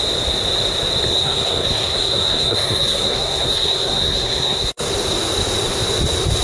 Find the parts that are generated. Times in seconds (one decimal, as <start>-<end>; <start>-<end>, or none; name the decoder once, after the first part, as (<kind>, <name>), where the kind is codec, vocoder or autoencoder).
1.1-4.9 (codec, SNAC)